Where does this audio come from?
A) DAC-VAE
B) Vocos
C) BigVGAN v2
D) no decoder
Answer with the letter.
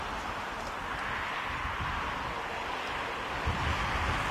D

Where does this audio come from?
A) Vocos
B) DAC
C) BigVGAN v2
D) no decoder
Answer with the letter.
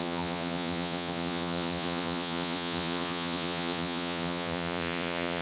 A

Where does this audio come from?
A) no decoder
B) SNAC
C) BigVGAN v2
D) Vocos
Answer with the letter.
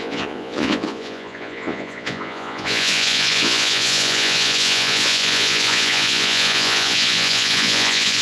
D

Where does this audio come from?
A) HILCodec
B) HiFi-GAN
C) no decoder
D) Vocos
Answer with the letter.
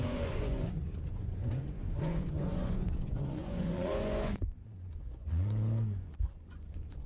D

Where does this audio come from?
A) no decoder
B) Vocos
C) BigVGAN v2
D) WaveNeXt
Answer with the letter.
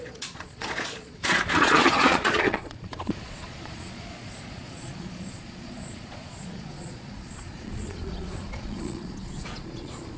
B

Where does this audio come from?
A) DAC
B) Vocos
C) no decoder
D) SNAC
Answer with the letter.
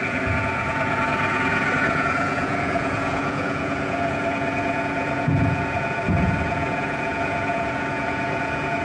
B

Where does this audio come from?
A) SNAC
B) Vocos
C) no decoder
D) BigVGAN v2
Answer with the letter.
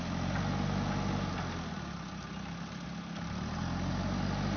C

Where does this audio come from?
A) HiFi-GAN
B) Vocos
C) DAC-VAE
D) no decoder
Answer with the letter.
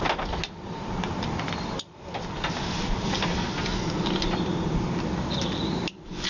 D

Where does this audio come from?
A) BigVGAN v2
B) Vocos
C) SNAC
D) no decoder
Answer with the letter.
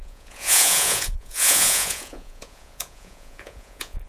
B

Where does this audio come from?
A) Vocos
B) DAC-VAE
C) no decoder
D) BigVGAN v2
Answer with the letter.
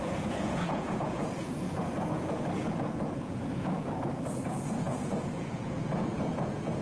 A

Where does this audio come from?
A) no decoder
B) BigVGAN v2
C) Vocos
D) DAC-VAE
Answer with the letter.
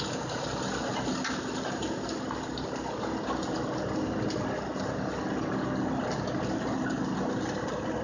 A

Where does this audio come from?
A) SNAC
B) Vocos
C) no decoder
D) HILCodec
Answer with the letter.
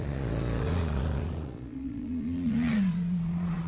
B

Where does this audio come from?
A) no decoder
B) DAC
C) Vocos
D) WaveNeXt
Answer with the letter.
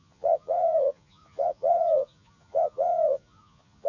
C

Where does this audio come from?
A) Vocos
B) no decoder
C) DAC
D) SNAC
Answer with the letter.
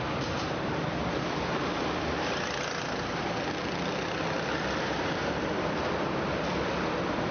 B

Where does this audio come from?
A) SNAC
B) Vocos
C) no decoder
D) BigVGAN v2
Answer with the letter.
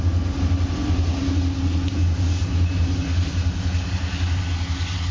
C